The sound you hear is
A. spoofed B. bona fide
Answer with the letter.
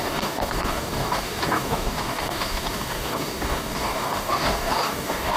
A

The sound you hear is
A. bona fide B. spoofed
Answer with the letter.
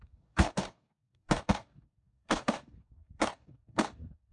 B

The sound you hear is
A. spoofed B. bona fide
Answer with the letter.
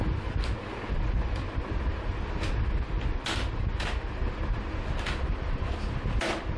B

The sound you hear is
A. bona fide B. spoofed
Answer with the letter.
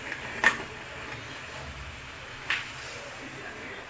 A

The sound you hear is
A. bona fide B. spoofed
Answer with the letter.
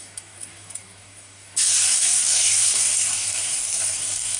B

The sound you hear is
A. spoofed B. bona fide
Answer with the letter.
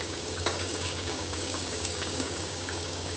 A